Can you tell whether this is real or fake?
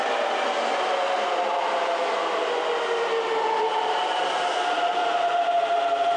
real